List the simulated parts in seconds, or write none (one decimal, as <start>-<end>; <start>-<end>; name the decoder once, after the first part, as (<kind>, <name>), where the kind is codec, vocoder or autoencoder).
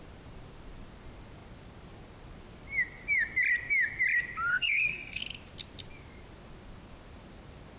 4.5-5.2 (codec, SNAC)